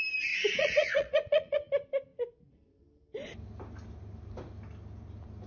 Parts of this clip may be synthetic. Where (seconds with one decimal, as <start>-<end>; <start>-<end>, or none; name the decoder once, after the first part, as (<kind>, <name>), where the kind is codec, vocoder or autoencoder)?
0.6-1.6 (vocoder, Vocos)